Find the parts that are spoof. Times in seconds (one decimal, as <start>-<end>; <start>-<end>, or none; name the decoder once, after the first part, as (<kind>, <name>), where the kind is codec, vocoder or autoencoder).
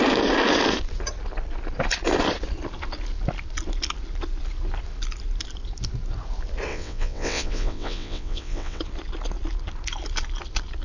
6.7-8.8 (vocoder, WaveNeXt)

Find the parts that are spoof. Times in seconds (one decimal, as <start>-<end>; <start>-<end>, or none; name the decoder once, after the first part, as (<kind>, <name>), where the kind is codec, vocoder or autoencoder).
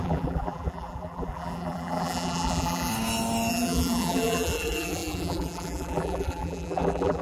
0.0-2.9 (vocoder, BigVGAN v2); 3.5-7.2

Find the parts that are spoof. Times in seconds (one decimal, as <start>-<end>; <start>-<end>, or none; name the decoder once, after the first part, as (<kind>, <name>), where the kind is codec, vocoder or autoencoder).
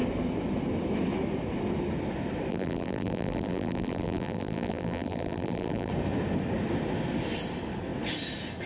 2.5-5.9 (vocoder, BigVGAN v2)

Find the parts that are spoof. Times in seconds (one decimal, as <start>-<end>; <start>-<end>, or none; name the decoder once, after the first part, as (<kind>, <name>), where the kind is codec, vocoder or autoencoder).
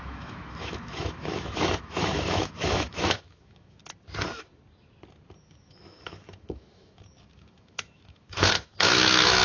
0.0-3.8 (autoencoder, DAC-VAE); 5.4-9.4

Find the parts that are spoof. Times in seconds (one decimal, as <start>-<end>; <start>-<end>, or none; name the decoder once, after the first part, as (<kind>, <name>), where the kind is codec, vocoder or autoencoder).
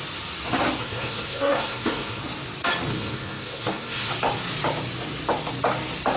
0.8-2.2 (codec, SNAC); 2.9-4.1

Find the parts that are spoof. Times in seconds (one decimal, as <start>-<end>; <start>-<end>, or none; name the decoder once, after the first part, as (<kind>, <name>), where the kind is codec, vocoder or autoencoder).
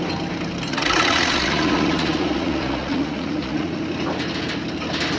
0.7-3.8 (vocoder, Vocos)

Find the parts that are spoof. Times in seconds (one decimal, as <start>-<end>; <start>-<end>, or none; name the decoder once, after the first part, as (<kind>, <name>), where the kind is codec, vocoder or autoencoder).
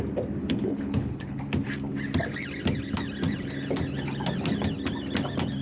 0.4-1.4 (codec, HILCodec)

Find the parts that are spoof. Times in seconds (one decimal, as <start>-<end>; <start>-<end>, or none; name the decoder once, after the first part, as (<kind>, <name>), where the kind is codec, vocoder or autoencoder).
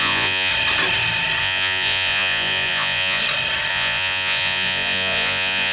0.0-0.5 (vocoder, Vocos); 1.4-3.2; 3.7-5.7